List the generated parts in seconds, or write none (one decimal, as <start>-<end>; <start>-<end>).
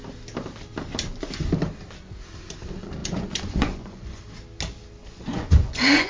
3.0-4.2; 5.0-6.1